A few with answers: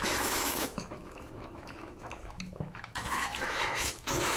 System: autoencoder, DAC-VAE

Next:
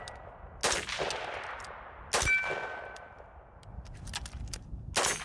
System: none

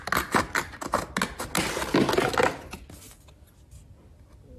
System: none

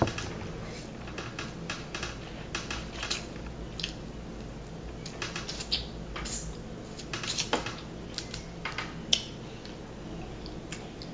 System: none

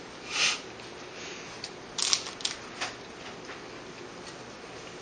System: none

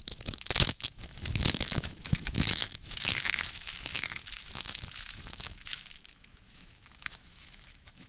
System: autoencoder, DAC-VAE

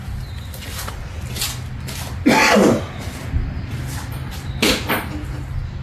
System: none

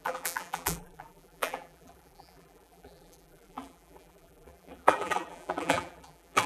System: vocoder, BigVGAN v2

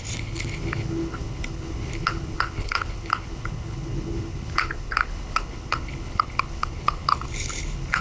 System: codec, HILCodec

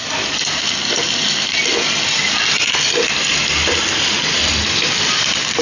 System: none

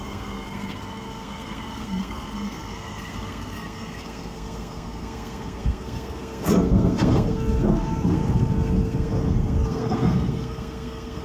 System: codec, SNAC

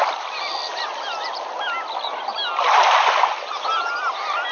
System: none